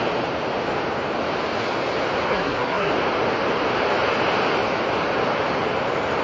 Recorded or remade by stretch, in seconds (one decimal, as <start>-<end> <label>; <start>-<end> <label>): 0.0-2.3 recorded; 2.3-2.9 remade; 2.9-6.2 recorded